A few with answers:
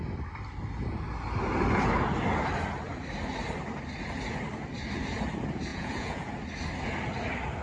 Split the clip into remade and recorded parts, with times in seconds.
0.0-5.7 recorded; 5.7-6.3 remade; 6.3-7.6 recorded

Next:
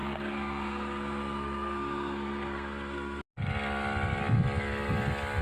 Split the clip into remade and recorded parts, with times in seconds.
0.0-3.2 remade; 3.2-5.4 recorded

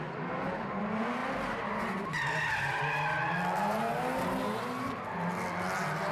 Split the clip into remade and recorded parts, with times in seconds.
0.0-6.1 recorded

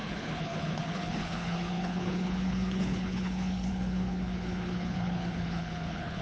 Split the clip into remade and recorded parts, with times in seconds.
0.0-6.2 remade

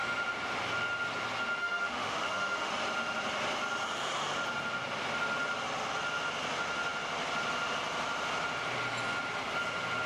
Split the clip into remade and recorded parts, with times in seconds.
0.0-1.6 recorded; 1.6-2.7 remade; 2.7-10.1 recorded